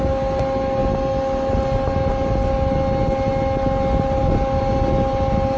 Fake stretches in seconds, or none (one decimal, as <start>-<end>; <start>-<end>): none